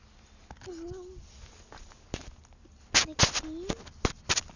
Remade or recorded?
recorded